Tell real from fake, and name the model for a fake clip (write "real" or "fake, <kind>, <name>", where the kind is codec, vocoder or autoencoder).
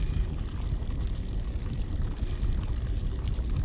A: real